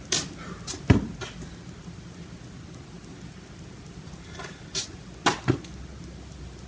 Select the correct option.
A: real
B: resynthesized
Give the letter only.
A